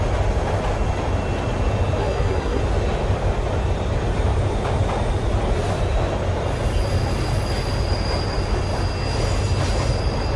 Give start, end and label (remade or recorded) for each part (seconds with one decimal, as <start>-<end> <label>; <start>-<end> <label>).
0.0-2.0 recorded; 2.0-2.6 remade; 2.6-10.4 recorded